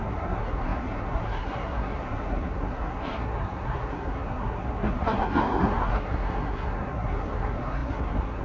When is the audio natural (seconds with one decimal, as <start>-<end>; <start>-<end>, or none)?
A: none